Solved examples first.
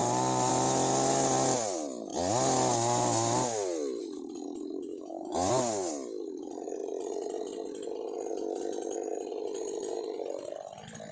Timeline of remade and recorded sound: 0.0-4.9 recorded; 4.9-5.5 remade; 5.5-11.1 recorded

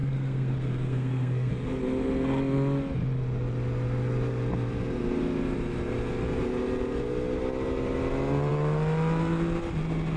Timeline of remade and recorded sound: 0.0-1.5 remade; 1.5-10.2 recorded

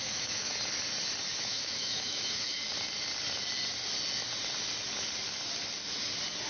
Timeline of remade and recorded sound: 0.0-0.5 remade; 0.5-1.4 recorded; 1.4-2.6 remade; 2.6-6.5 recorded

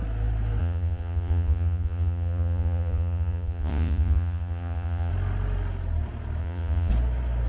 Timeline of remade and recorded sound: 0.0-0.6 recorded; 0.6-5.1 remade; 5.1-6.4 recorded; 6.4-6.9 remade; 6.9-7.5 recorded